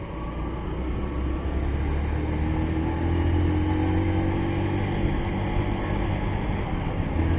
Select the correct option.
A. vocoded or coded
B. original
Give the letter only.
B